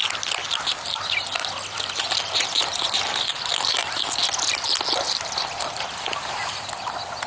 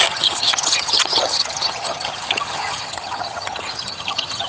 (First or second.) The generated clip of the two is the second